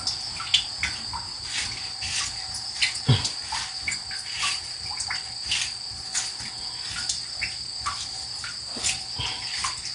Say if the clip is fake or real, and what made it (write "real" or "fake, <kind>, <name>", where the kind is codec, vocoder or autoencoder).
real